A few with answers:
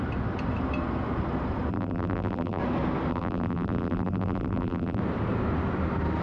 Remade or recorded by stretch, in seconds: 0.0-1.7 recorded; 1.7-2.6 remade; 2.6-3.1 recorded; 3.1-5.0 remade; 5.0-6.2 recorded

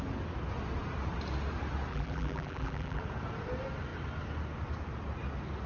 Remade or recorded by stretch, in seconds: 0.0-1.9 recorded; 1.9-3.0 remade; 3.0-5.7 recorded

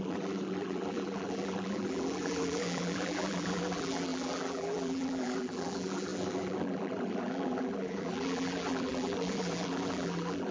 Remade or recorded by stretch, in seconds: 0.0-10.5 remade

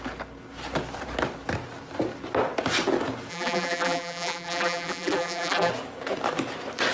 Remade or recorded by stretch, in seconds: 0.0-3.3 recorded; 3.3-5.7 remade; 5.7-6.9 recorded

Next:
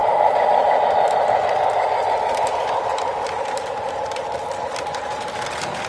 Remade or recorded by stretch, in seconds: 0.0-0.9 remade; 0.9-5.9 recorded